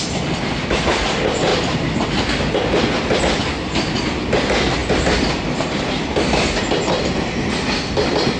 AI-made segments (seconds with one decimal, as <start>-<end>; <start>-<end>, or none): none